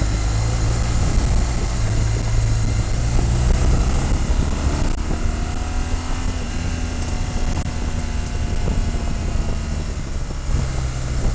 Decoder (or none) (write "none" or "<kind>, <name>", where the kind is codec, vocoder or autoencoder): none